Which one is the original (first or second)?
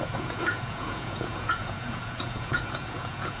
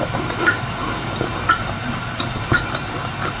second